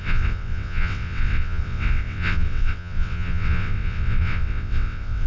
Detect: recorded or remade remade